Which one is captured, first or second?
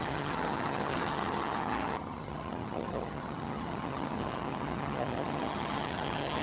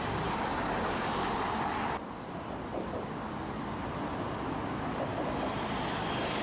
second